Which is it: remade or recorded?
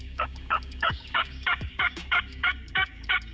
remade